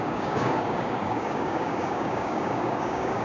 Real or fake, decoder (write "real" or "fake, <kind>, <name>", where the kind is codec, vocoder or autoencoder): fake, codec, DAC